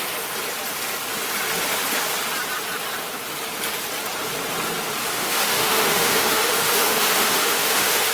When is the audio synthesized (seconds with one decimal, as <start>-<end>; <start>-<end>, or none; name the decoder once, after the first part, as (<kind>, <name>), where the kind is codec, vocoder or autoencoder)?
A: 5.0-8.1 (autoencoder, DAC-VAE)